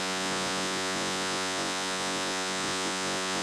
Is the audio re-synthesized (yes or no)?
yes